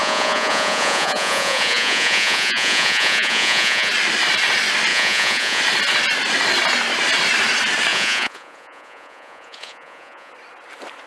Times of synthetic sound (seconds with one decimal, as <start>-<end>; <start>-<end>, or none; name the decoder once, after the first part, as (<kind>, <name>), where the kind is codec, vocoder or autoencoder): 0.0-3.9 (vocoder, Vocos); 4.9-5.6; 7.9-10.3

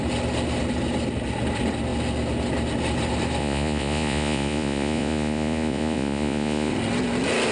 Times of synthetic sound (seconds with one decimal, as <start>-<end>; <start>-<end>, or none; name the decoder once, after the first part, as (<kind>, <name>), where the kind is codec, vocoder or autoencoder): 3.4-6.7 (vocoder, Vocos)

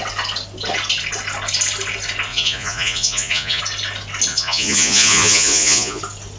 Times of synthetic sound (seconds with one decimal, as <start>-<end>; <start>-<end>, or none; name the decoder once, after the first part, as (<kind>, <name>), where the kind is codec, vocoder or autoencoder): 2.3-3.6 (vocoder, Vocos); 4.3-6.0

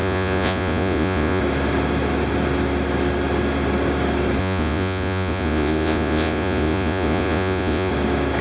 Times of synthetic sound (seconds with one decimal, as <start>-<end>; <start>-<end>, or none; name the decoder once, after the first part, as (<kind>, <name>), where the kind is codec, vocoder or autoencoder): 0.0-1.4 (vocoder, Vocos); 4.4-7.9

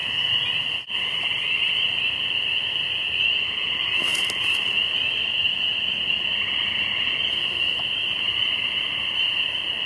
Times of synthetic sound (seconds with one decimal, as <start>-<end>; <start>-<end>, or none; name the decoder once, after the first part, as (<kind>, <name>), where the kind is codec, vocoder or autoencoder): none